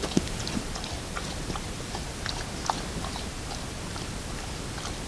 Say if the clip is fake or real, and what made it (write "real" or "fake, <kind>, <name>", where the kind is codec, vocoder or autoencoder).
real